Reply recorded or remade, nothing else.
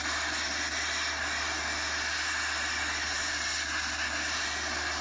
recorded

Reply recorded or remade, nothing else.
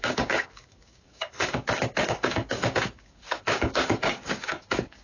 remade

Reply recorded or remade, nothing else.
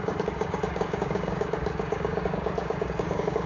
remade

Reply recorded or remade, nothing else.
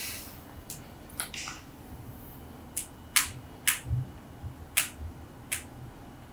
recorded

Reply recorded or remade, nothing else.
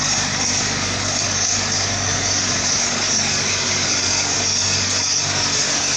remade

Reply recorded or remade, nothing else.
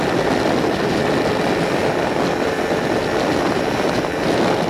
recorded